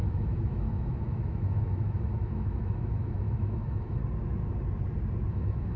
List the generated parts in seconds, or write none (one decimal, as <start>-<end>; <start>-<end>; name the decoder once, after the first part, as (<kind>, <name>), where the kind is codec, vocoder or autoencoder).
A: 0.0-4.0 (autoencoder, DAC-VAE); 5.3-5.8

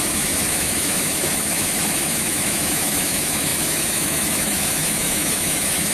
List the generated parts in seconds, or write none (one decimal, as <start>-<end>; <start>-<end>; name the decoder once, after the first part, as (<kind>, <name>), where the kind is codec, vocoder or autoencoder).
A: 0.0-5.9 (autoencoder, DAC-VAE)

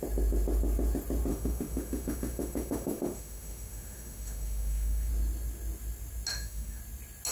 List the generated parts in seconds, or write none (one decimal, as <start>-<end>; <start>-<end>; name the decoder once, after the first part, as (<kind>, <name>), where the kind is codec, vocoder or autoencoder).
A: 1.3-5.1 (autoencoder, DAC-VAE); 6.3-6.8

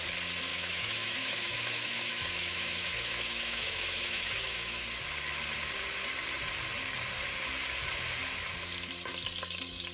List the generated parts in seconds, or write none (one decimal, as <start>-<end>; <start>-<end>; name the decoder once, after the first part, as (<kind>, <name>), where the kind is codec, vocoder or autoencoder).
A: 0.5-4.8 (autoencoder, DAC-VAE)